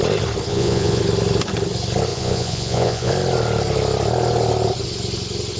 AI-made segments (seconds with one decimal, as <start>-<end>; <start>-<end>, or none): 0.5-1.0; 2.1-3.1